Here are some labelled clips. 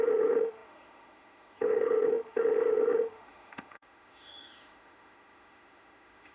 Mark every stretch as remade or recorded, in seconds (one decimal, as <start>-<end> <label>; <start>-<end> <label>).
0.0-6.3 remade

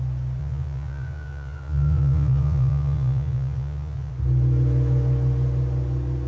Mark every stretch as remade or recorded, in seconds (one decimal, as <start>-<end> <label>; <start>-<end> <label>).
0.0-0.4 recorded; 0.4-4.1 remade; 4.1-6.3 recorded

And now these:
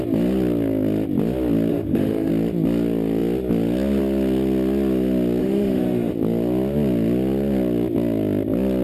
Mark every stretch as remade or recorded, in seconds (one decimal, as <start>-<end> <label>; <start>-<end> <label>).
0.0-1.7 recorded; 1.7-2.3 remade; 2.3-5.4 recorded; 5.4-6.1 remade; 6.1-8.8 recorded

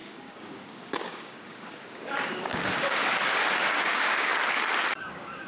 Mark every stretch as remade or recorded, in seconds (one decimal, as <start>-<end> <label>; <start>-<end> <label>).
0.0-4.3 remade; 4.3-5.0 recorded; 5.0-5.5 remade

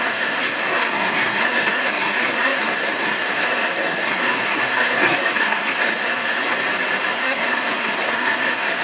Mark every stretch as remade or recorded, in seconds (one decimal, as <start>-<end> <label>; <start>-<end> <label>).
0.0-6.6 remade; 6.6-7.1 recorded; 7.1-8.8 remade

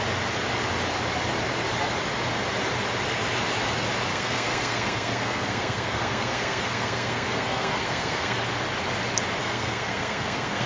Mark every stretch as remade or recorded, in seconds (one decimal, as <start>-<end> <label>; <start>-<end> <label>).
0.0-4.1 recorded; 4.1-8.4 remade; 8.4-9.4 recorded; 9.4-10.7 remade

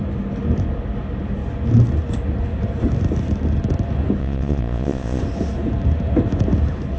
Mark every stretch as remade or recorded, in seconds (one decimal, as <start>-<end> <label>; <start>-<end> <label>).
0.0-4.2 recorded; 4.2-5.2 remade; 5.2-7.0 recorded

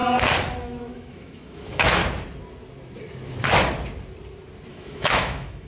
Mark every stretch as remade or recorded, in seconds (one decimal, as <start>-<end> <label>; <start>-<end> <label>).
0.0-0.6 recorded; 0.6-2.0 remade; 2.0-4.7 recorded; 4.7-5.7 remade